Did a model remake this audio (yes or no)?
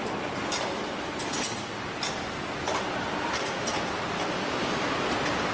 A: no